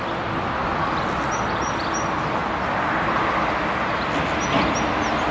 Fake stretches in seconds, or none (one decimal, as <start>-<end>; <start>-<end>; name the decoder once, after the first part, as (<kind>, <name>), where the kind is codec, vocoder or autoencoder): none